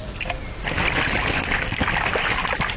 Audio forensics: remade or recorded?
recorded